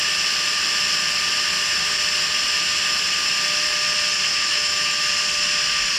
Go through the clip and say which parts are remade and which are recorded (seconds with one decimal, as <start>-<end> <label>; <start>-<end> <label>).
0.0-4.3 recorded; 4.3-5.1 remade; 5.1-6.0 recorded